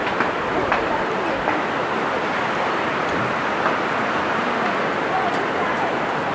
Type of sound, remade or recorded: recorded